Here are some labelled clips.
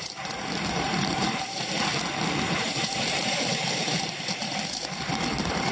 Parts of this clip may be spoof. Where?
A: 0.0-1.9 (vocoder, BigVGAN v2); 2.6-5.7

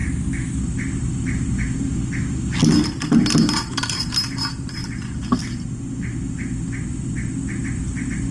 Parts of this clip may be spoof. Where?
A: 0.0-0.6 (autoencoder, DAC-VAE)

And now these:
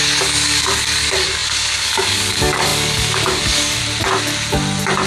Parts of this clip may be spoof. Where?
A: 0.0-3.8 (codec, DAC)

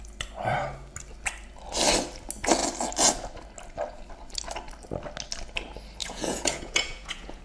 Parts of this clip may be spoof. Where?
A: 6.0-7.4 (vocoder, Vocos)

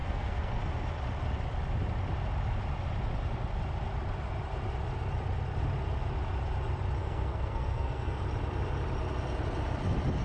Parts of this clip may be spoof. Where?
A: 0.0-0.6 (codec, SNAC); 7.0-8.2

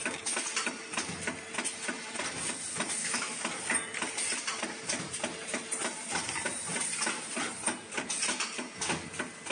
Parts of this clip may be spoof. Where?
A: 3.0-3.5 (autoencoder, DAC-VAE)